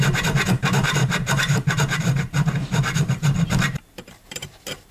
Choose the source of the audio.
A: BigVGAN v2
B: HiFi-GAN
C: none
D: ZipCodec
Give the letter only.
A